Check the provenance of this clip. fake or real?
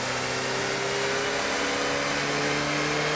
real